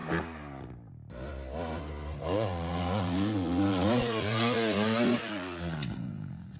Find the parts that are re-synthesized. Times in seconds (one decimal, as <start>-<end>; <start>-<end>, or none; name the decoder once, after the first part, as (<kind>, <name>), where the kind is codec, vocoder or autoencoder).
2.2-6.6 (vocoder, Vocos)